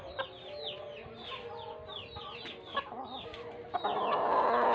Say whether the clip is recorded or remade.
recorded